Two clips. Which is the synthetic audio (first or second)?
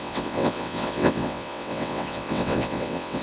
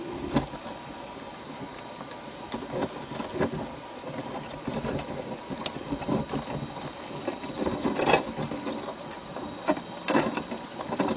first